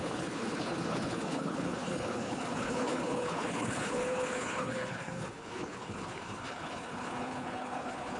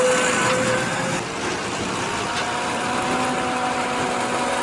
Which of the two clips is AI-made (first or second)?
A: first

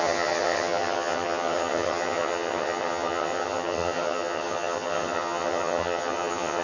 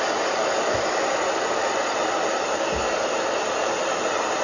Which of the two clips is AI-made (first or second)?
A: first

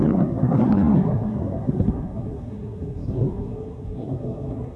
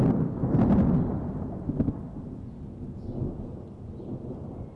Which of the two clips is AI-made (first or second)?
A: first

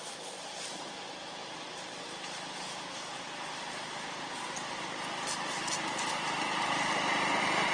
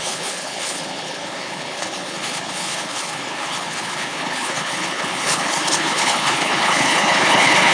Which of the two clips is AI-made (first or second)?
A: second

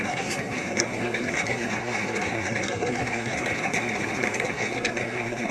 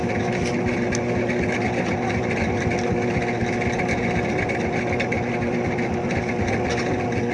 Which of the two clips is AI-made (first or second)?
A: first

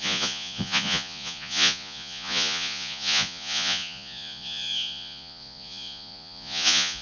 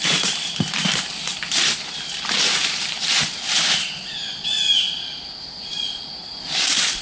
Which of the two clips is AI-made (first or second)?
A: first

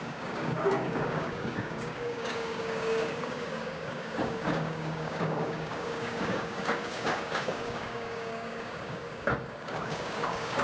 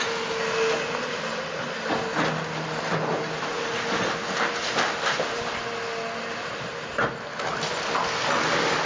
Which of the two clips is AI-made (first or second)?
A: first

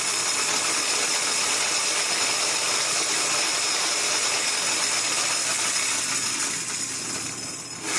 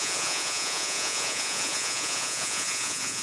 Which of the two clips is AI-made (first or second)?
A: second